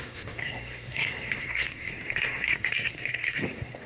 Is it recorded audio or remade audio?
remade